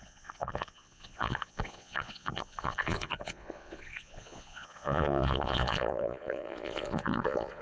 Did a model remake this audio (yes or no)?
yes